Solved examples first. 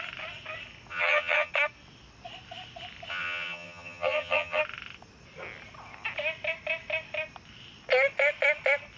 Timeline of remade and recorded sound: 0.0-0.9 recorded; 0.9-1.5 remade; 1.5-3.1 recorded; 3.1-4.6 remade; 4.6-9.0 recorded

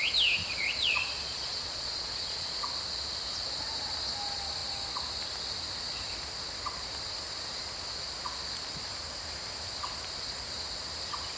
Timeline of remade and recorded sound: 0.0-0.4 recorded; 0.4-2.6 remade; 2.6-11.4 recorded

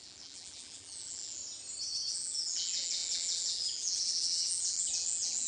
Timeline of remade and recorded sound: 0.0-1.4 remade; 1.4-2.1 recorded; 2.1-5.5 remade